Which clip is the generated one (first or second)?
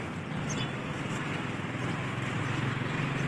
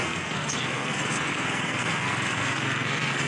second